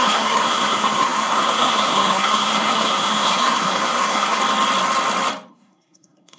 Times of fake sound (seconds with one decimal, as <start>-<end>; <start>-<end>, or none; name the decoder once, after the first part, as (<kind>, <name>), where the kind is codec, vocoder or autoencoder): 0.0-4.4 (codec, SNAC); 5.5-6.4